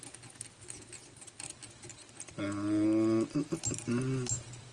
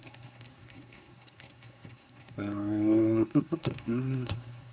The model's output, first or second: second